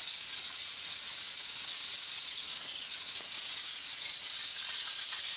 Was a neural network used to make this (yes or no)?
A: yes